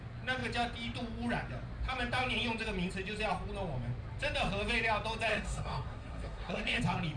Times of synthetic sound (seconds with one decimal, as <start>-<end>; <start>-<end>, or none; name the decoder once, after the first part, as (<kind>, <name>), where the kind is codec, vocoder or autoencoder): 5.3-6.8 (codec, SNAC)